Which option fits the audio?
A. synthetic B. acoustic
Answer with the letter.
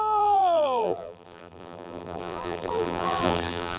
A